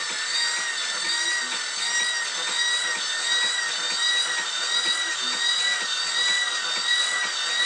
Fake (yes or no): no